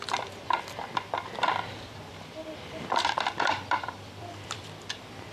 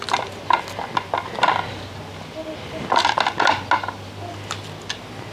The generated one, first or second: first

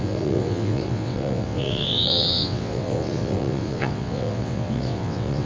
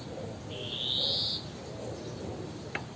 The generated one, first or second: first